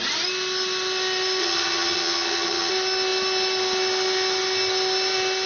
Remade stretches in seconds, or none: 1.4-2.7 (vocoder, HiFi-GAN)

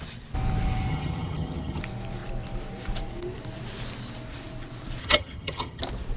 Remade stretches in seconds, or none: 0.9-1.8 (vocoder, HiFi-GAN); 5.0-5.8

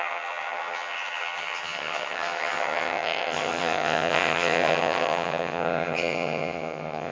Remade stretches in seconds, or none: 0.0-7.1 (vocoder, HiFi-GAN)

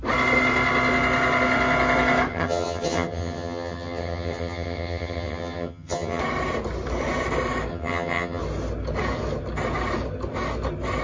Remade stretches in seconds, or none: 2.3-6.2 (vocoder, HiFi-GAN); 7.7-8.4

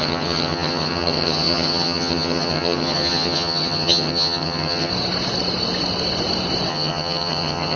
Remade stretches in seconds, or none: 0.0-4.9 (vocoder, HiFi-GAN); 6.7-7.8

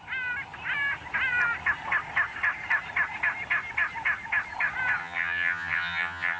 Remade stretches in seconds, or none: 5.0-6.4 (vocoder, HiFi-GAN)